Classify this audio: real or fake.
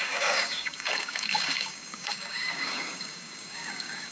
fake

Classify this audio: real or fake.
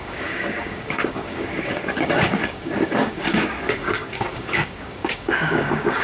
fake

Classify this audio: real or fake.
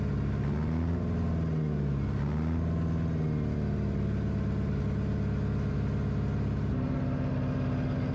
real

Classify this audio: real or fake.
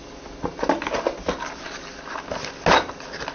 real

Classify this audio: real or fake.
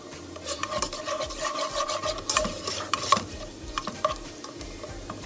fake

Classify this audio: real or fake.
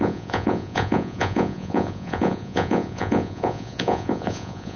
fake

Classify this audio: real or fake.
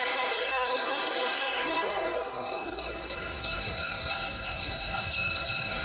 fake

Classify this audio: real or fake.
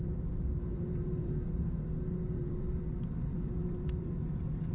fake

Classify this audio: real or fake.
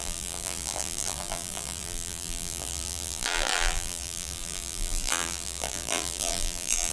fake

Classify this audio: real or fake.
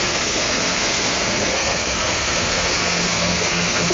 fake